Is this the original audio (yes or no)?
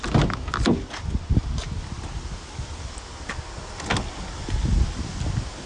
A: yes